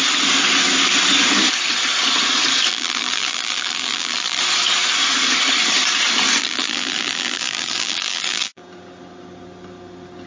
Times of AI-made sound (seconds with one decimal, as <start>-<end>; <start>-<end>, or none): 2.7-4.4; 6.4-8.6